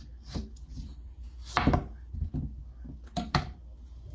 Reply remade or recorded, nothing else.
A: recorded